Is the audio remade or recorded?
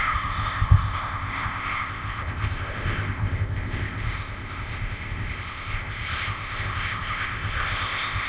remade